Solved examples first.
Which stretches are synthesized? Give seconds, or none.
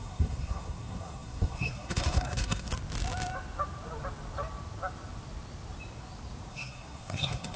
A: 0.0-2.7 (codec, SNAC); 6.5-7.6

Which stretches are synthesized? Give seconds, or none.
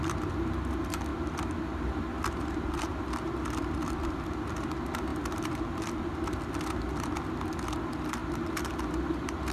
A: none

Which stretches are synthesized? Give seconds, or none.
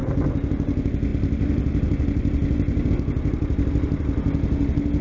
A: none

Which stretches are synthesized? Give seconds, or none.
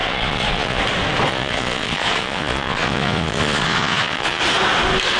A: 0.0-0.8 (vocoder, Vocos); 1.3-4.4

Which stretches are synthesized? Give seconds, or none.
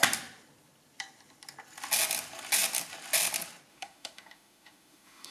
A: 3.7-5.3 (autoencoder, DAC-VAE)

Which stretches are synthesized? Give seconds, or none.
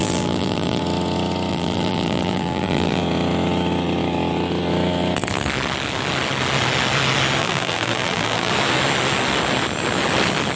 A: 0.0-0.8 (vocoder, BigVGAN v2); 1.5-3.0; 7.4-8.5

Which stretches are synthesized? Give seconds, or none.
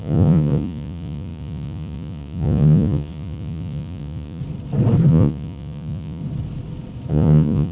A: 0.0-4.4 (vocoder, Vocos); 5.1-6.2; 7.1-7.7